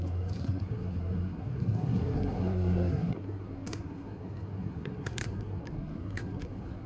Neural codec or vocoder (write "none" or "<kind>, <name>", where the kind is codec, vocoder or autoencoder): codec, SNAC